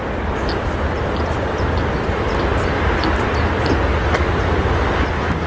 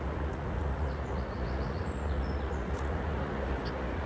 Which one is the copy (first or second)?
second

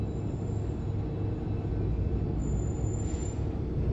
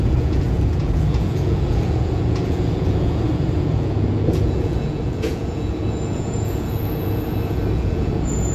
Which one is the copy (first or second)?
second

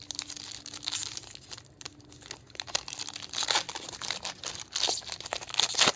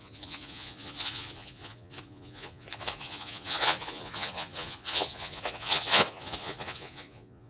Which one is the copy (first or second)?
second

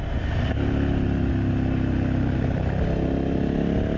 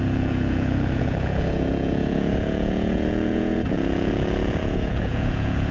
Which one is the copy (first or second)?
second